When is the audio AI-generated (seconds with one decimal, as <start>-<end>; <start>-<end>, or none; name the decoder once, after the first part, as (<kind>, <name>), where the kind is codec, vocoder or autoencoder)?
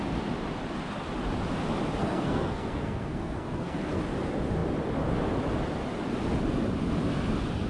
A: 2.0-4.0 (codec, SNAC)